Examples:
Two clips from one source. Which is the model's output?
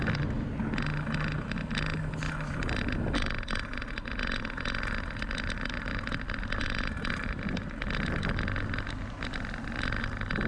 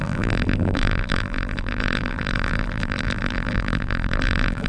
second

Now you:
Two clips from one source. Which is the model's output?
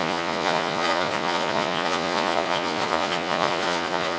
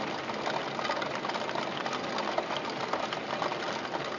first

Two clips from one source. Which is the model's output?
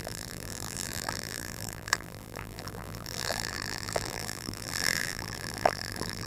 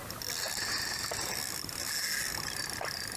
first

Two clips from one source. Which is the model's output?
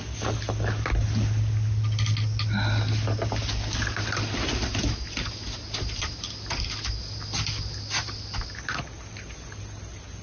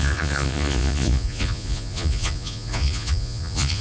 second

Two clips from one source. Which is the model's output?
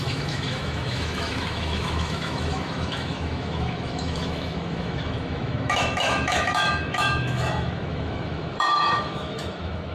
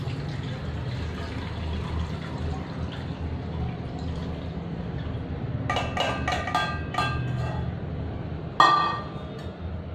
first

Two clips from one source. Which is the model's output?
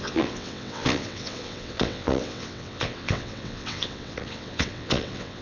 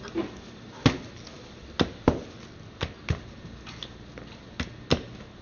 first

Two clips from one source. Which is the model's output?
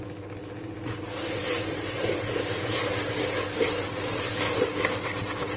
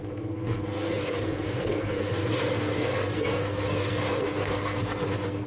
second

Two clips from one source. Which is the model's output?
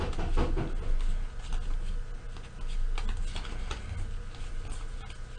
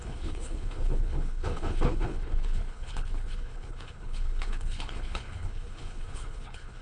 second